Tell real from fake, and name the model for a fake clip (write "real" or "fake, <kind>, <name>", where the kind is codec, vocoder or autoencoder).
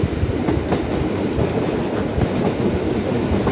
real